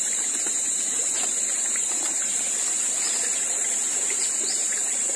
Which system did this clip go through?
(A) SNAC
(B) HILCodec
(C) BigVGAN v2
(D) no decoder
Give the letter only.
C